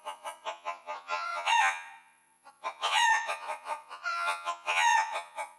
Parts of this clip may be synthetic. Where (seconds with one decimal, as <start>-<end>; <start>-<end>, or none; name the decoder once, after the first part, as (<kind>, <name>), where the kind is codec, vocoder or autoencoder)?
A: 0.0-5.6 (vocoder, Vocos)